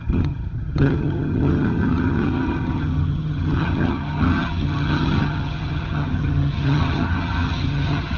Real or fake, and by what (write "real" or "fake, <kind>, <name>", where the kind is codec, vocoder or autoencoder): fake, vocoder, HiFi-GAN